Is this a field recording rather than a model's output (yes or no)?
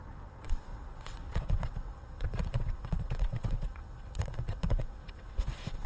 no